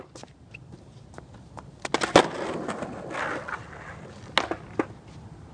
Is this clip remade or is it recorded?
recorded